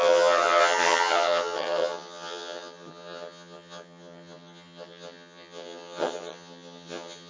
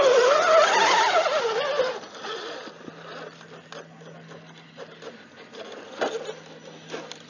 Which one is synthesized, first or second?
first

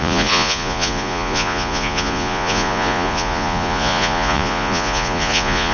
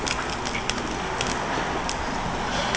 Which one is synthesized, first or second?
first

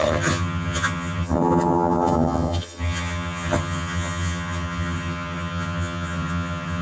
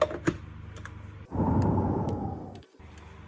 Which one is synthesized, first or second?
first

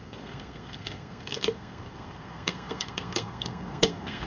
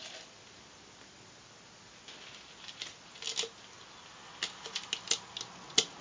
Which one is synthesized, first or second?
first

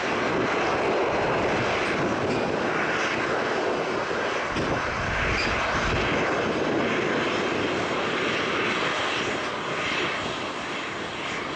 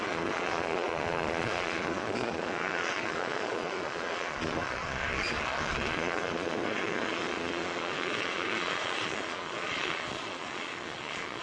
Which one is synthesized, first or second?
second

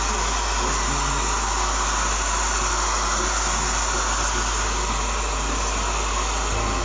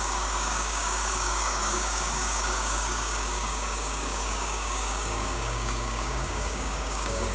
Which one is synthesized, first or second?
second